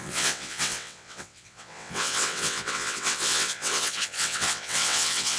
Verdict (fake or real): fake